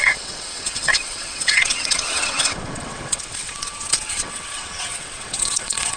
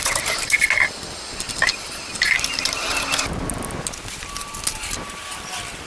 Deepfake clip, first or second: first